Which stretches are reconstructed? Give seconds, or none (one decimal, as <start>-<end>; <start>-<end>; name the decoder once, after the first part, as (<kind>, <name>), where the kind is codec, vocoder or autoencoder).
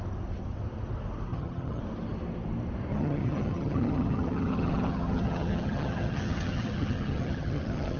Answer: 1.3-1.8 (vocoder, HiFi-GAN); 2.9-8.0